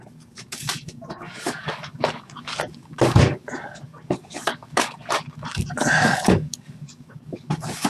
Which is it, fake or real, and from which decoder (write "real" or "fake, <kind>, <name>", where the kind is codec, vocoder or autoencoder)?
fake, codec, DAC